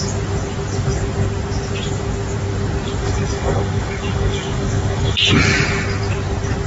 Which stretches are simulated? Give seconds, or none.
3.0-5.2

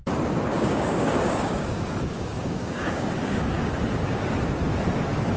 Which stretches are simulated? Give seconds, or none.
0.5-3.7

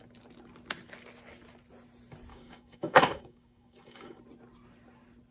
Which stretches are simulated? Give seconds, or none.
2.3-4.2

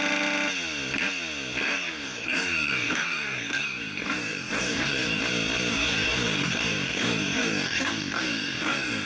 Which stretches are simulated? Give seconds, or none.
1.6-5.2; 5.7-9.1

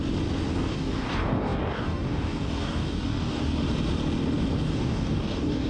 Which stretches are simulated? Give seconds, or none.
0.5-3.6; 4.6-5.7